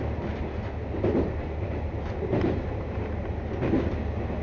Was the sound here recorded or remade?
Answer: recorded